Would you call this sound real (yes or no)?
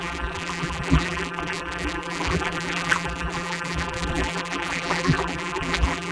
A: no